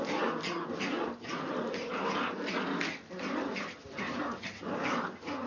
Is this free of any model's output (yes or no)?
yes